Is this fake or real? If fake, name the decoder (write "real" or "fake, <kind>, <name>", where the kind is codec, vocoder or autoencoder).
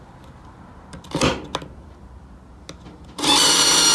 real